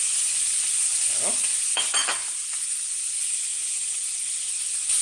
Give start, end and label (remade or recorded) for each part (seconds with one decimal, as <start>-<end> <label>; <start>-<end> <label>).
0.0-3.5 recorded; 3.5-4.0 remade; 4.0-5.0 recorded